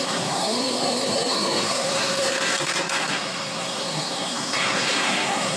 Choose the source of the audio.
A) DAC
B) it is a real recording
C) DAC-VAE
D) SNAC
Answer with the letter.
D